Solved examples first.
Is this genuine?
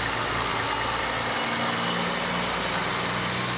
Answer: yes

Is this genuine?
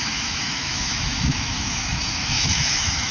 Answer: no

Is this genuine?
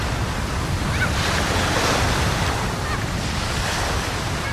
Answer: yes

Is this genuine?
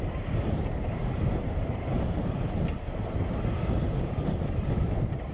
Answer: no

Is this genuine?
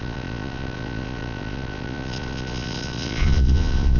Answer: no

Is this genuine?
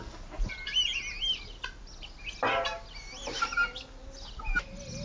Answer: yes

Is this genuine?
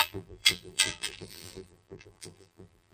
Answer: no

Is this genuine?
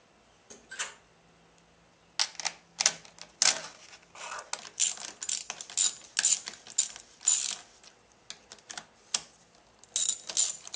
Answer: yes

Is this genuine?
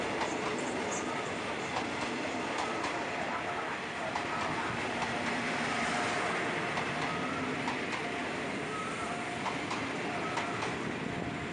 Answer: yes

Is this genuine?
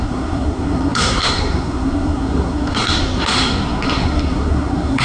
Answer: no